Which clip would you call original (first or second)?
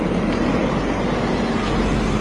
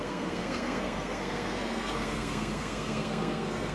first